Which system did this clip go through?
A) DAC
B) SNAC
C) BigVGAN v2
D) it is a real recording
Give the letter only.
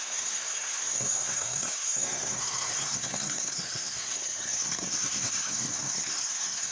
B